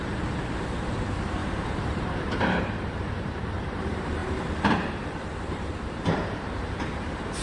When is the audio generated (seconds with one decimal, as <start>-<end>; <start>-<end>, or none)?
0.0-7.4